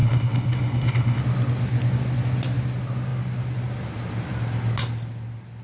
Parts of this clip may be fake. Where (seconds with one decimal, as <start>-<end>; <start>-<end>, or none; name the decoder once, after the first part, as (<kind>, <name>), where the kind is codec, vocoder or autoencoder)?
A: 0.0-1.2 (codec, HILCodec)

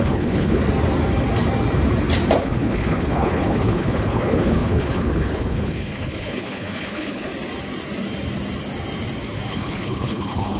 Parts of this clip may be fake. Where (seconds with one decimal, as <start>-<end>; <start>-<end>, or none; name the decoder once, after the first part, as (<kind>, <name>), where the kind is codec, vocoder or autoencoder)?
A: 0.0-0.6 (codec, HILCodec); 2.4-7.3; 9.5-10.6

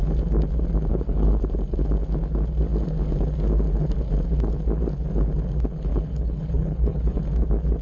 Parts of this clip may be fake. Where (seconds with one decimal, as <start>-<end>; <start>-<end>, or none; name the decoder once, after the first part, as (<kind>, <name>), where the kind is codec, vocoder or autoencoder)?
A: 0.9-1.4 (codec, HILCodec); 5.9-7.2

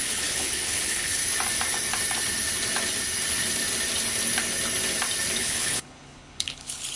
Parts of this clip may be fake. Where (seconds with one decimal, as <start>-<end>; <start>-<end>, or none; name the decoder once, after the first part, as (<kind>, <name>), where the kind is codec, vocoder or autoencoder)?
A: 0.0-1.2 (codec, HILCodec); 5.4-7.0

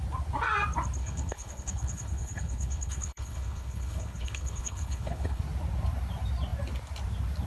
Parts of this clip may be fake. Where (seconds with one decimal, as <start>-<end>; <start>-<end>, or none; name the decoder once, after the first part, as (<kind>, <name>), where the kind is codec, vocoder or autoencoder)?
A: 1.0-5.4 (codec, HILCodec)

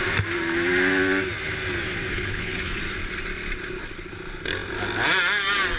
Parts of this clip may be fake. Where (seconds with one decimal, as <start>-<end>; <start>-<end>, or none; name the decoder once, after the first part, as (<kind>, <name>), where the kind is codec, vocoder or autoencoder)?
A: 2.1-2.8 (codec, HILCodec)

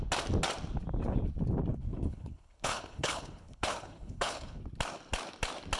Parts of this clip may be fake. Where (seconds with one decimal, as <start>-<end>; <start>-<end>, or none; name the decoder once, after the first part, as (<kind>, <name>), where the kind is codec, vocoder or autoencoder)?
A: 1.7-4.6 (codec, HILCodec)